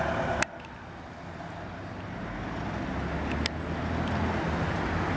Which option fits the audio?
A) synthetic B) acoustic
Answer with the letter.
B